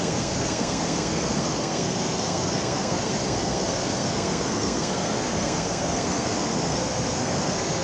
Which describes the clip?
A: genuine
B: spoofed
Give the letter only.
B